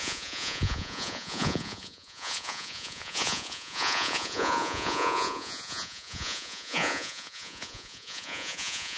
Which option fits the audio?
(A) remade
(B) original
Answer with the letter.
A